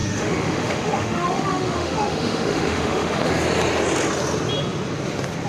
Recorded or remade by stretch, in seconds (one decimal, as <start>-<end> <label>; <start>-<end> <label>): 0.0-3.3 remade; 3.3-5.5 recorded